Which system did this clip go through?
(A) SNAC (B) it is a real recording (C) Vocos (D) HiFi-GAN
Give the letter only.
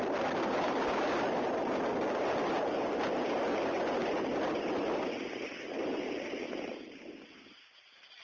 B